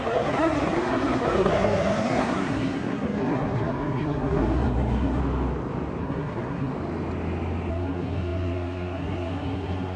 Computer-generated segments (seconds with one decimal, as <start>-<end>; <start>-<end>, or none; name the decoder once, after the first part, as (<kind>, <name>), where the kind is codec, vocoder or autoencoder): 0.0-5.2 (codec, SNAC); 6.0-6.7; 7.7-10.0